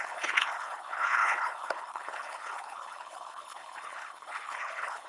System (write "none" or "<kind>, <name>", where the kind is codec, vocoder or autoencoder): codec, HILCodec